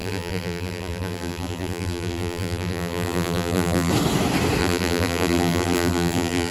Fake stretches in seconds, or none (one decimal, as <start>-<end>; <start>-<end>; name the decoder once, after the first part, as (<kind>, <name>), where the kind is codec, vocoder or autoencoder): 0.0-3.9 (vocoder, BigVGAN v2); 4.6-6.5

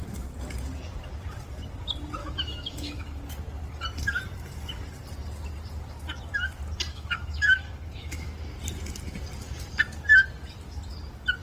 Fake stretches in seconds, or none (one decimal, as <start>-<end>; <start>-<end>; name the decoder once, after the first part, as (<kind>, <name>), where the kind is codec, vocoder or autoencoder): 2.2-3.2 (autoencoder, DAC-VAE); 6.9-8.3

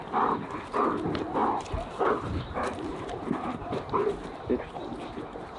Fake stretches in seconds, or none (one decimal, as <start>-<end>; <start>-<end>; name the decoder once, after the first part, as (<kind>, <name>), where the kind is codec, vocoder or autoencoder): 1.4-4.5 (vocoder, BigVGAN v2)

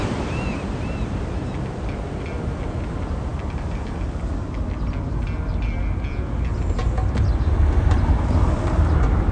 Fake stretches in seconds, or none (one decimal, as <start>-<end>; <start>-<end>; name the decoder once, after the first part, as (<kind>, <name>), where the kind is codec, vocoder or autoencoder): none

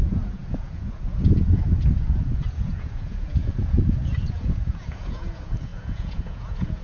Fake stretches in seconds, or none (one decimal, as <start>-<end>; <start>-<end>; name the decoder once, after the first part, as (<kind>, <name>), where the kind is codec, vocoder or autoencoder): 0.0-6.8 (vocoder, Vocos)